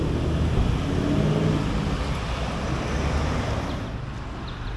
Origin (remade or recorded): recorded